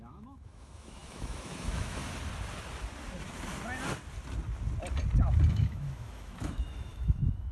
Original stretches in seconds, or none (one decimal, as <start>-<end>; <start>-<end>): 2.0-5.5